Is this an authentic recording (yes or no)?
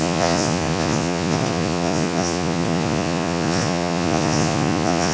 no